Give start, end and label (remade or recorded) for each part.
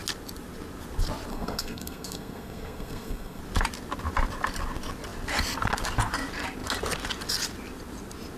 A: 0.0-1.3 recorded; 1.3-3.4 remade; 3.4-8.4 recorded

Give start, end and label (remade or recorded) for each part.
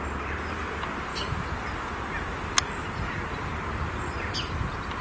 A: 0.0-5.0 recorded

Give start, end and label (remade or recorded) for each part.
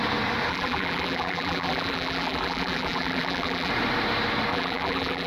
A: 0.0-0.5 recorded; 0.5-3.7 remade; 3.7-4.5 recorded; 4.5-5.3 remade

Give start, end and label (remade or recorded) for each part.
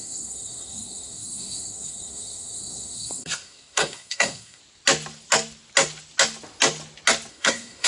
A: 0.0-4.6 remade; 4.6-7.3 recorded; 7.3-7.9 remade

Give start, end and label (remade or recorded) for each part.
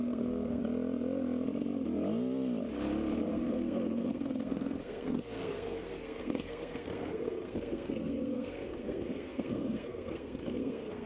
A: 0.0-0.6 remade; 0.6-3.3 recorded; 3.3-11.1 remade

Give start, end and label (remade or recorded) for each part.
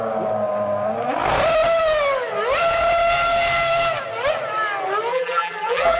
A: 0.0-5.1 recorded; 5.1-6.0 remade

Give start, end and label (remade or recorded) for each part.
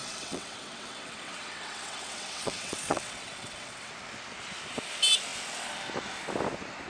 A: 0.0-3.9 remade; 3.9-6.9 recorded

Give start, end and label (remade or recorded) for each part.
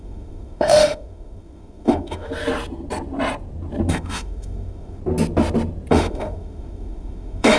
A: 0.0-2.3 remade; 2.3-3.9 recorded; 3.9-5.0 remade; 5.0-5.9 recorded; 5.9-7.6 remade